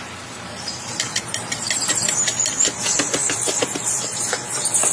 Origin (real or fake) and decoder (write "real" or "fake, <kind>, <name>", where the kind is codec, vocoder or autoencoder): fake, vocoder, BigVGAN v2